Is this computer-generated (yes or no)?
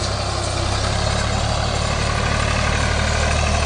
no